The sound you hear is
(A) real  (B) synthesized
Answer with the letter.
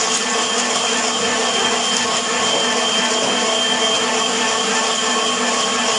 A